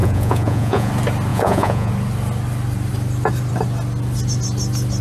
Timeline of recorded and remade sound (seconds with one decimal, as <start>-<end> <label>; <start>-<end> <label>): 0.0-0.9 remade; 0.9-1.3 recorded; 1.3-1.9 remade; 1.9-5.0 recorded